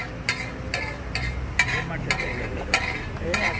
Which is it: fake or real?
real